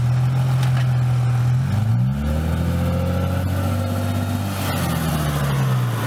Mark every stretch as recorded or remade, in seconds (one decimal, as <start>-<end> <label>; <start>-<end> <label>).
0.0-6.1 recorded